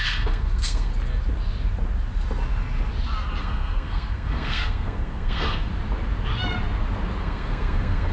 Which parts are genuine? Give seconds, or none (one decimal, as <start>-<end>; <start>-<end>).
0.9-3.4; 5.7-7.2